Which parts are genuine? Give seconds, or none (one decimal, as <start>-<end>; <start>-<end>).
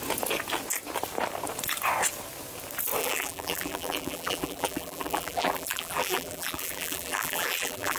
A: 0.0-3.0